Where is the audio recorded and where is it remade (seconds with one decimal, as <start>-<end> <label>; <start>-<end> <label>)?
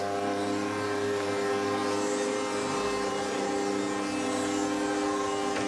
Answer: 0.0-5.7 recorded